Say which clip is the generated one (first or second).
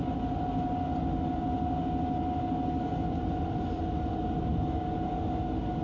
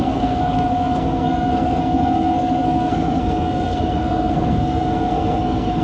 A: second